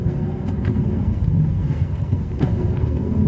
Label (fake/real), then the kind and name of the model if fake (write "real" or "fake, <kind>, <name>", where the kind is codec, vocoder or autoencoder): fake, codec, SNAC